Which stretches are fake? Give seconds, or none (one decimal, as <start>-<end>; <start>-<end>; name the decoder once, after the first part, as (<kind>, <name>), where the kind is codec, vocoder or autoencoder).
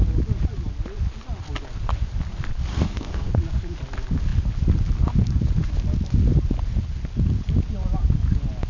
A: 2.7-3.3 (codec, SNAC)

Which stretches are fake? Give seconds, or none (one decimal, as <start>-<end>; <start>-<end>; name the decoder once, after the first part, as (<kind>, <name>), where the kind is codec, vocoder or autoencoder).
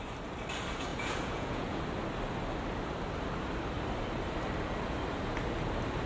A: 0.9-1.8 (vocoder, Vocos)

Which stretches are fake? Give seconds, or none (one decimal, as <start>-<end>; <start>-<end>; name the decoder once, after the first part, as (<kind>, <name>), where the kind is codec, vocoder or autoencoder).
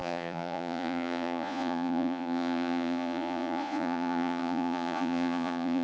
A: 0.0-5.8 (vocoder, Vocos)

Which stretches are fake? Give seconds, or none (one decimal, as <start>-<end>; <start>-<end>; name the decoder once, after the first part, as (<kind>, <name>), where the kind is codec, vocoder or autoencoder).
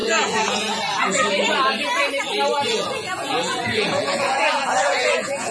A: 0.0-0.8 (vocoder, Vocos); 2.7-5.5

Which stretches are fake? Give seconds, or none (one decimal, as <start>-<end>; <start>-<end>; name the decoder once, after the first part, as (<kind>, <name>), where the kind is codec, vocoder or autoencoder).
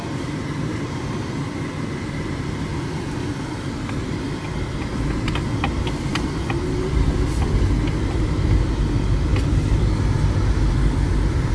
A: none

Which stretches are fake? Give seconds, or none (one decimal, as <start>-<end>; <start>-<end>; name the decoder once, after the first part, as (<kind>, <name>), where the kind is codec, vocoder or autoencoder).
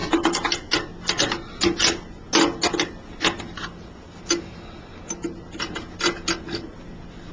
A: none